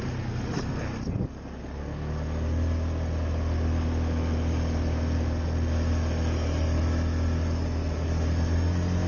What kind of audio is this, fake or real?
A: real